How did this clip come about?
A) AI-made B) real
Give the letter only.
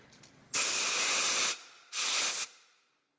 B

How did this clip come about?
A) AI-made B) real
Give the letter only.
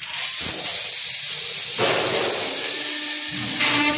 B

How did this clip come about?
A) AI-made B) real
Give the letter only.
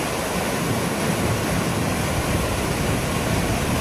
B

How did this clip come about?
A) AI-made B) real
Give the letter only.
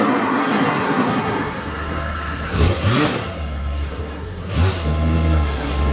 A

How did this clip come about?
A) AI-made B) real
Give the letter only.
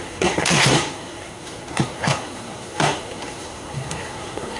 A